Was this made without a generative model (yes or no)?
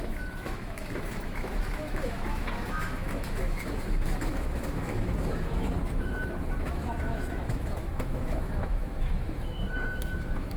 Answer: no